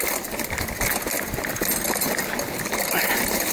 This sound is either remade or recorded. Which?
recorded